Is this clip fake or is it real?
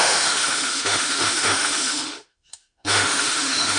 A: fake